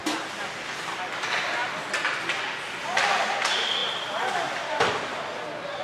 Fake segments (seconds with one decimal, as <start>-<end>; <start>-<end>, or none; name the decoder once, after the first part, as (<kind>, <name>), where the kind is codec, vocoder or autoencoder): none